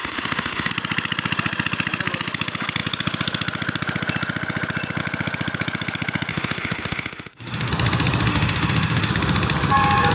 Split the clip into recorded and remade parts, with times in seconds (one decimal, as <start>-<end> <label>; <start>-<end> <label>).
0.0-0.7 remade; 0.7-6.3 recorded; 6.3-7.7 remade; 7.7-8.3 recorded; 8.3-9.1 remade; 9.1-10.1 recorded